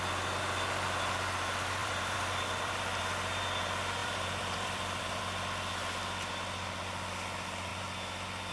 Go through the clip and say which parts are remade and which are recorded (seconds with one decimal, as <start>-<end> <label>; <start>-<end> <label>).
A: 0.0-1.8 recorded; 1.8-3.0 remade; 3.0-4.0 recorded; 4.0-5.2 remade; 5.2-8.5 recorded

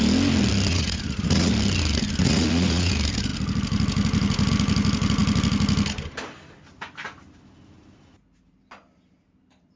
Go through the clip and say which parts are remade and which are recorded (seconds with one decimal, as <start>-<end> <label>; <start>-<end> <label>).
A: 0.0-0.7 recorded; 0.7-1.5 remade; 1.5-2.2 recorded; 2.2-2.9 remade; 2.9-9.8 recorded

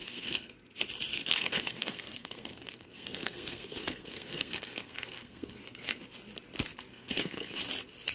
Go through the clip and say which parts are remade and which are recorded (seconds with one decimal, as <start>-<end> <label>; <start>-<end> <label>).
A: 0.0-0.5 remade; 0.5-1.1 recorded; 1.1-6.0 remade; 6.0-6.9 recorded; 6.9-7.6 remade; 7.6-8.1 recorded

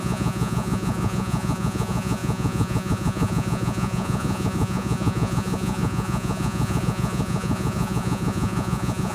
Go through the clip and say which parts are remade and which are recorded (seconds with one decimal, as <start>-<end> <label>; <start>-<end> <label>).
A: 0.0-9.1 remade

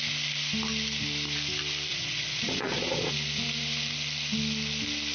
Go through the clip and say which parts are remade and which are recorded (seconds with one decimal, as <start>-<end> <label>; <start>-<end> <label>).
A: 0.0-1.9 recorded; 1.9-3.1 remade; 3.1-5.1 recorded